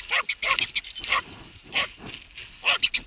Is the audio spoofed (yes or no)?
no